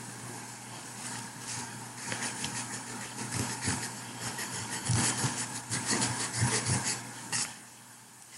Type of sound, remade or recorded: remade